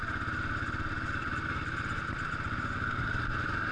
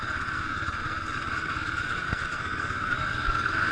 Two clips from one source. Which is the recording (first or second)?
first